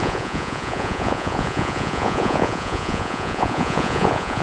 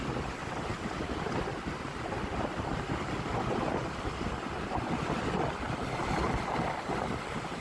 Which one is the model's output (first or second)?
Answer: first